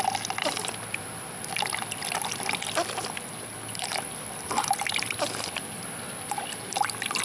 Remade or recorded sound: remade